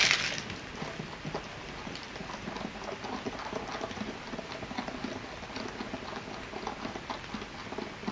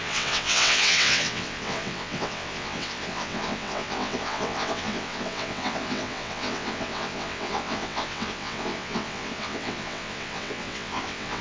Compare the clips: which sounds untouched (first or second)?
first